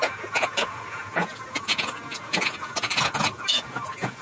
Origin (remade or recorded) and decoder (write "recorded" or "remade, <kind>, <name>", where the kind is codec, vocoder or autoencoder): remade, vocoder, Vocos